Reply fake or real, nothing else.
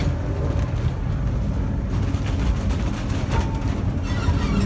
real